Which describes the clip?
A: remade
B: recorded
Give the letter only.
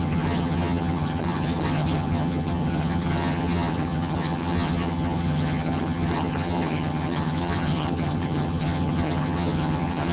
A